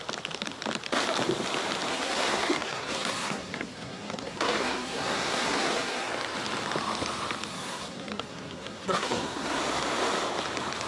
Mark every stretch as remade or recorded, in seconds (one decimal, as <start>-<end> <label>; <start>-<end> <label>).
0.0-1.9 recorded; 1.9-6.1 remade; 6.1-7.5 recorded; 7.5-9.6 remade; 9.6-10.9 recorded